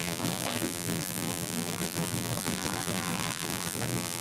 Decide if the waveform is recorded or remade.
remade